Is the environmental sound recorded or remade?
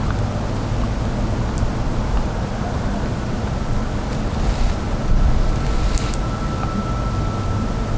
recorded